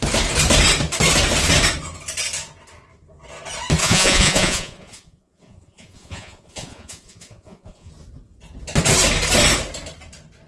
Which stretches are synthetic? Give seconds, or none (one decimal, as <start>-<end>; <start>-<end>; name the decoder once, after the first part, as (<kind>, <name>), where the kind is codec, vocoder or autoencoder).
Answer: 3.8-7.9 (vocoder, Vocos)